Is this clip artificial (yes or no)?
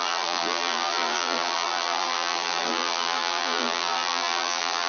yes